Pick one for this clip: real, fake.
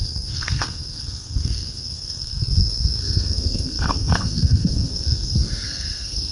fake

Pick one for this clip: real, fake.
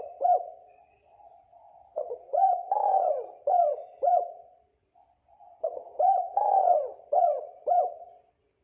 fake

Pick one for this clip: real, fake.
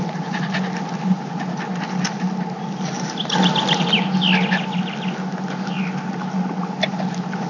real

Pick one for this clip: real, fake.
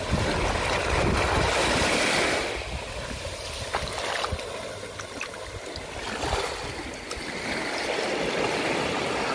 real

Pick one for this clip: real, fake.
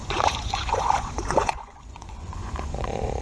fake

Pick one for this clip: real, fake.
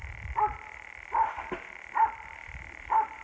fake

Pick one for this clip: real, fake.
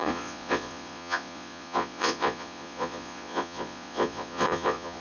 fake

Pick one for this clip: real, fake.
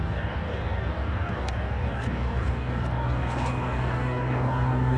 fake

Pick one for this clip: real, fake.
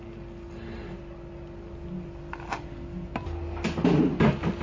real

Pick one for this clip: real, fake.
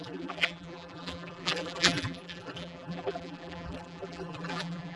fake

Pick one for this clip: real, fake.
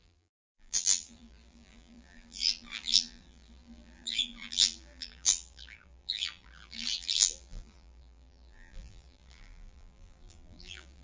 fake